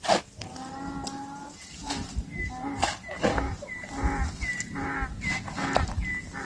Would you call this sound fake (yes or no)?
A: no